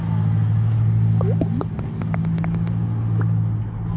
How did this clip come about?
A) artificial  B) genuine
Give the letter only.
B